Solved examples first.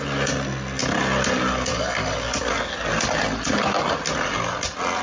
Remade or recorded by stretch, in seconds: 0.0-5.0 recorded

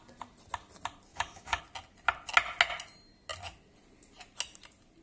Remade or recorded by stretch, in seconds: 0.0-1.1 recorded; 1.1-1.6 remade; 1.6-5.0 recorded

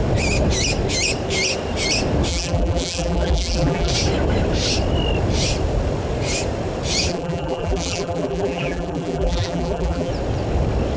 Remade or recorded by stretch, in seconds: 0.0-2.3 recorded; 2.3-3.9 remade; 3.9-7.1 recorded; 7.1-10.1 remade; 10.1-11.0 recorded